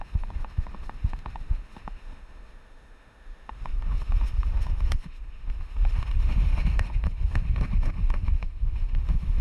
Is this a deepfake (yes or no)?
yes